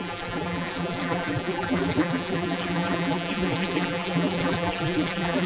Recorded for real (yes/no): no